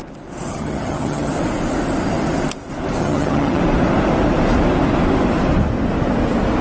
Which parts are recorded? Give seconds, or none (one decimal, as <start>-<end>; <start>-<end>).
0.0-0.5; 1.3-3.0; 3.6-6.6